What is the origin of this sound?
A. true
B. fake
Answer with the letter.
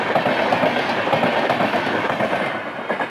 A